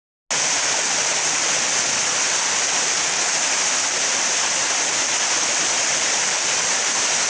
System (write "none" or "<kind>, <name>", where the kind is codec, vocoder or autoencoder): none